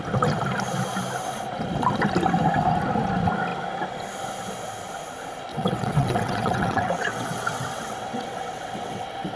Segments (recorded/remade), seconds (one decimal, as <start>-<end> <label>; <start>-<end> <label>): 0.0-5.5 recorded; 5.5-9.4 remade